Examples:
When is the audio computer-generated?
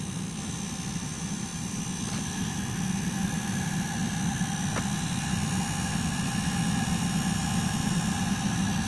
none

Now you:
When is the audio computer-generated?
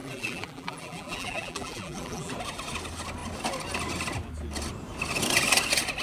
0.0-2.3 (vocoder, BigVGAN v2)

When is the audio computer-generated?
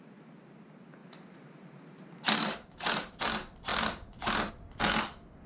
1.0-3.2 (vocoder, BigVGAN v2)